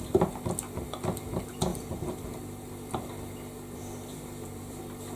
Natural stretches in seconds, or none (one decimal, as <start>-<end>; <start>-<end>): 0.0-1.7; 4.8-5.2